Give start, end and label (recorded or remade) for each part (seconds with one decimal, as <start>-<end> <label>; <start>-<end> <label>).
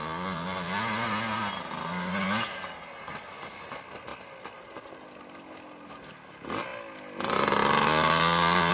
0.0-8.7 recorded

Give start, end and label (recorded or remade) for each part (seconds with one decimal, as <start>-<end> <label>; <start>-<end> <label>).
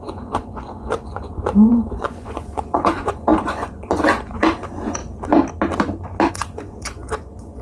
0.0-5.0 remade; 5.0-6.3 recorded; 6.3-7.6 remade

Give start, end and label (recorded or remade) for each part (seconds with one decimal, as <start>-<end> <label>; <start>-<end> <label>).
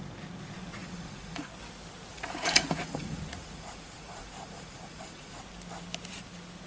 0.0-0.8 recorded; 0.8-1.5 remade; 1.5-2.1 recorded; 2.1-5.4 remade; 5.4-6.7 recorded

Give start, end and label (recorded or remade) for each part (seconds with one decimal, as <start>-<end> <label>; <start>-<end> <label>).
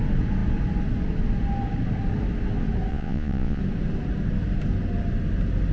0.0-2.9 recorded; 2.9-3.6 remade; 3.6-5.7 recorded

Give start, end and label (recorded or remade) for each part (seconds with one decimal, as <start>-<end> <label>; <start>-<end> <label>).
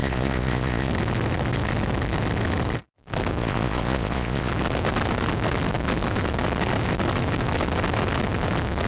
0.0-0.9 remade; 0.9-3.4 recorded; 3.4-4.5 remade; 4.5-8.9 recorded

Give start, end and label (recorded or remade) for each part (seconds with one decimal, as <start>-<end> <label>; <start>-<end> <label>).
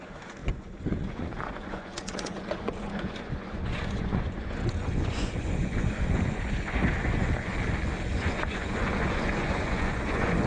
0.0-7.5 remade; 7.5-8.1 recorded; 8.1-10.5 remade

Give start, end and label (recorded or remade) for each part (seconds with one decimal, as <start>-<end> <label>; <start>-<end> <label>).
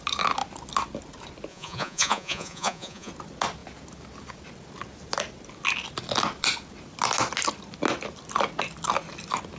0.0-1.5 recorded; 1.5-3.1 remade; 3.1-9.6 recorded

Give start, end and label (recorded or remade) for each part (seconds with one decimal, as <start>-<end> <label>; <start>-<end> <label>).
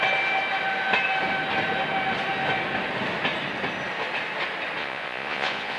0.0-4.8 recorded; 4.8-5.8 remade